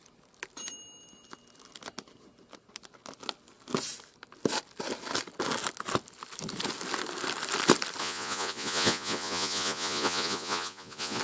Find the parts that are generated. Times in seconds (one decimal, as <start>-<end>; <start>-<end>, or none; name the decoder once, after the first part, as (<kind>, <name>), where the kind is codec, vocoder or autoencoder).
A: 8.0-11.2 (vocoder, Vocos)